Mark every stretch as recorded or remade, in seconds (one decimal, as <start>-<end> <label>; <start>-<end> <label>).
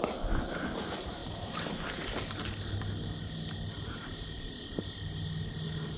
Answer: 0.0-6.0 recorded